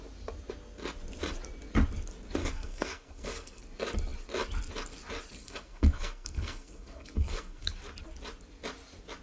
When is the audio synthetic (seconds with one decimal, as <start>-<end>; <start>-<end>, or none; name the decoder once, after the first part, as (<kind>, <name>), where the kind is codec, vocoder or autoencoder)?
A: 2.4-3.6 (codec, SNAC); 5.4-7.7